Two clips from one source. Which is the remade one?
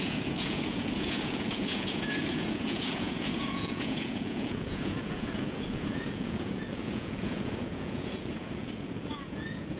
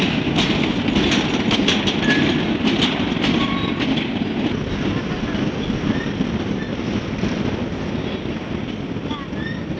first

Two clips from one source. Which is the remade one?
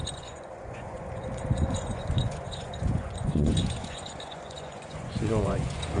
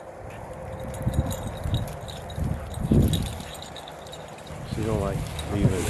first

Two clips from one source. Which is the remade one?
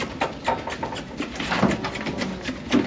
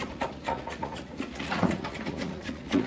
second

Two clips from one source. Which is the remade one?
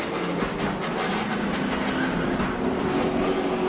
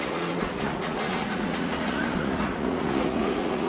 second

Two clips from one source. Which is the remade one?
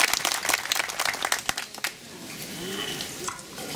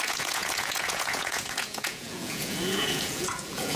second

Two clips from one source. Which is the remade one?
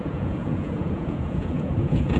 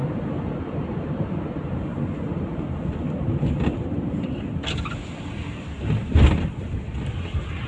first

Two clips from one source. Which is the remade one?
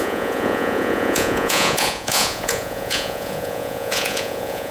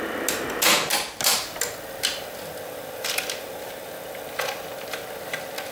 first